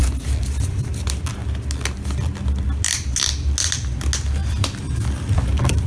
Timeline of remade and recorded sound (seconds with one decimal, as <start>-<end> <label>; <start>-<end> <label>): 0.0-4.4 recorded; 4.4-5.9 remade